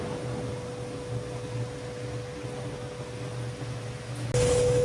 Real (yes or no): yes